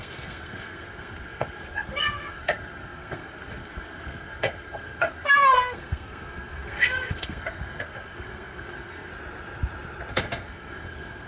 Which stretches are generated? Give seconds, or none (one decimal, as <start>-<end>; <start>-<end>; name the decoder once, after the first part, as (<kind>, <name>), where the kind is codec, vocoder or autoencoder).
0.0-9.1 (codec, SNAC); 10.1-11.3